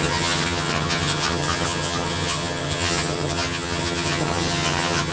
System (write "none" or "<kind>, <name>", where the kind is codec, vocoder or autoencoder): vocoder, HiFi-GAN